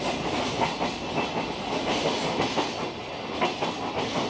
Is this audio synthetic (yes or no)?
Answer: no